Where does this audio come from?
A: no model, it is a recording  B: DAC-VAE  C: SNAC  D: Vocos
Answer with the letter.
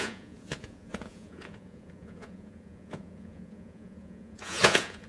D